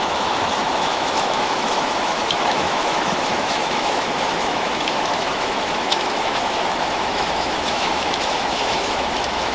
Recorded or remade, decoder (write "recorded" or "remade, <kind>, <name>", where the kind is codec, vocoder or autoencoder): remade, autoencoder, DAC-VAE